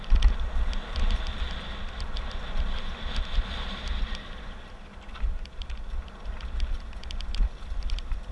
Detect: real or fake real